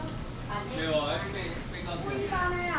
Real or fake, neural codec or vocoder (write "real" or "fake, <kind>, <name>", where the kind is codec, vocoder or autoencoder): real